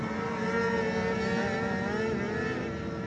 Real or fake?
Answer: real